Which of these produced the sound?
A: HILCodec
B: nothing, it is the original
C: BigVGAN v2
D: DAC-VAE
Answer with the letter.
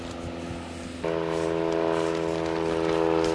B